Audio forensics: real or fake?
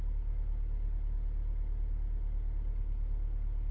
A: real